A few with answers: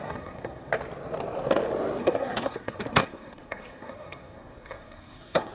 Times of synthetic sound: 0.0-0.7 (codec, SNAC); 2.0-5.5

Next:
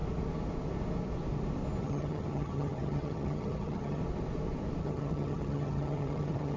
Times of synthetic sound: 1.8-4.0 (vocoder, HiFi-GAN); 4.8-6.6